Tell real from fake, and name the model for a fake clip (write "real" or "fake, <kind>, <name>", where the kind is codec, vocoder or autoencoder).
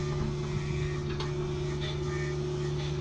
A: real